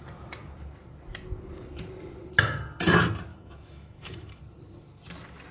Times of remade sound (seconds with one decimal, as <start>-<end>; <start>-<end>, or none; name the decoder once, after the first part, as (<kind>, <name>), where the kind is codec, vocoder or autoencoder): 3.3-4.4 (autoencoder, DAC-VAE)